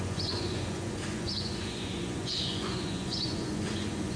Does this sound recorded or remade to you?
remade